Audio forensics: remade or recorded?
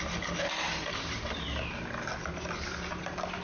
recorded